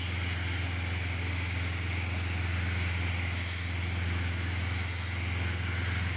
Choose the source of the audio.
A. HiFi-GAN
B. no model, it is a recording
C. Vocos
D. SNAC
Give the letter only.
B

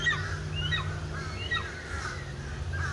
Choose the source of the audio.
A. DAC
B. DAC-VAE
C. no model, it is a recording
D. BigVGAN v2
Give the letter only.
C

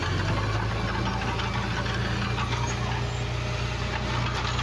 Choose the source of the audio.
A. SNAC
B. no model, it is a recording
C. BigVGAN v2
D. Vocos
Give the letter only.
B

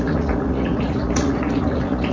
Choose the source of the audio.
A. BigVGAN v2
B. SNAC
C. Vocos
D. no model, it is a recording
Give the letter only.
C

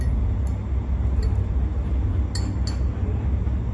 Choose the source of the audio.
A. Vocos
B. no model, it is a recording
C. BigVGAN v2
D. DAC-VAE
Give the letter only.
B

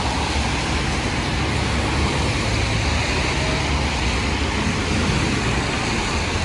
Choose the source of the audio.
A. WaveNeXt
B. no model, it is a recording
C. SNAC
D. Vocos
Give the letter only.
B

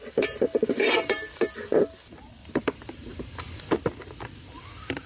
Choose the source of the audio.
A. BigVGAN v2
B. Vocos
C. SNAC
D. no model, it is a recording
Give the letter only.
A